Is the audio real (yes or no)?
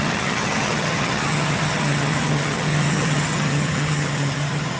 no